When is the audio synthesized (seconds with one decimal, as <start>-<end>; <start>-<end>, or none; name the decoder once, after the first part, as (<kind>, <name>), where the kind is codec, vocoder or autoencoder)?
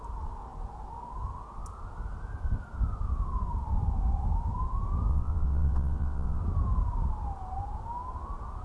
5.1-6.4 (vocoder, WaveNeXt)